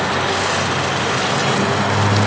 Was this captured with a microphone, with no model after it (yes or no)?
yes